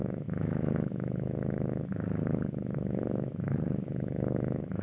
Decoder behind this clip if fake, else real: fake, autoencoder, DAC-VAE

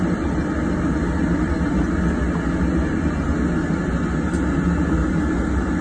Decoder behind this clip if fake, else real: real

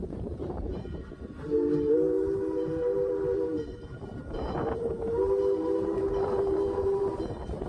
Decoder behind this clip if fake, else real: fake, vocoder, BigVGAN v2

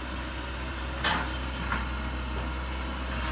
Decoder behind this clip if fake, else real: real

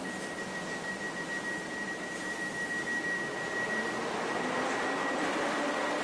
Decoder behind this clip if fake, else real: real